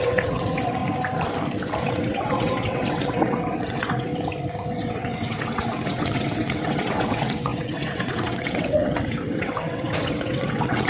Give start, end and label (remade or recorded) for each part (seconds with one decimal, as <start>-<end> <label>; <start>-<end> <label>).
0.0-0.8 remade; 0.8-1.8 recorded; 1.8-4.1 remade; 4.1-4.7 recorded; 4.7-10.9 remade